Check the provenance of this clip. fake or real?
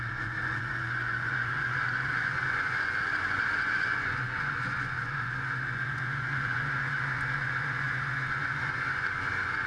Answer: fake